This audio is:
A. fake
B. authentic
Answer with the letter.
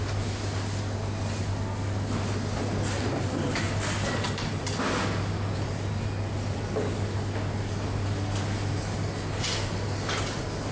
B